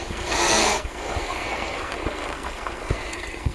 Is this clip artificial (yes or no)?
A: yes